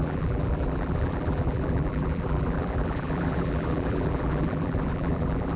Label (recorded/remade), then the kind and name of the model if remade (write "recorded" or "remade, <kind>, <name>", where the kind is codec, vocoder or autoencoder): remade, vocoder, BigVGAN v2